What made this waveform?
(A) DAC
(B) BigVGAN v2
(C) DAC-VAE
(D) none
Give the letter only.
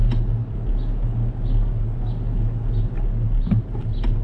D